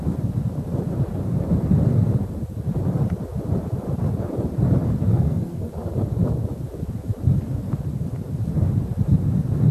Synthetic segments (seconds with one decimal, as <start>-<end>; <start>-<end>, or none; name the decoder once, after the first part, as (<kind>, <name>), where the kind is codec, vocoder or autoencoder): 5.1-5.7 (codec, SNAC)